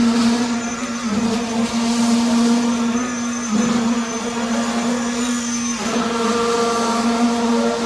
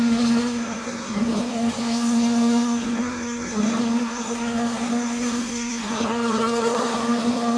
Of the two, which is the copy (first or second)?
second